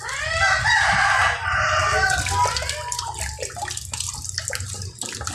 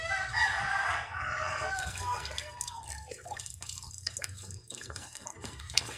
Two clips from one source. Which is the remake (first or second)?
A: second